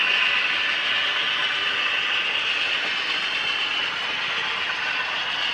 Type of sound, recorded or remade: recorded